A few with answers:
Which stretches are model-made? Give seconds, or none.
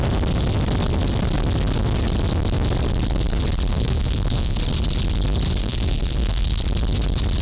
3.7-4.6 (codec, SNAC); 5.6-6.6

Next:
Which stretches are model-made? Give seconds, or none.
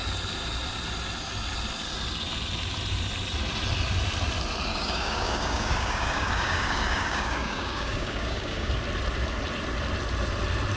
4.7-8.7 (codec, DAC)